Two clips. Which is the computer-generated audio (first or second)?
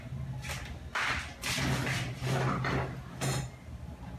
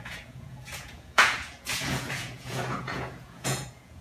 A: second